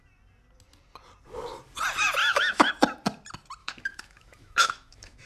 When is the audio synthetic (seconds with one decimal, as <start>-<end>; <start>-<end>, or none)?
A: 2.2-2.7; 3.6-5.3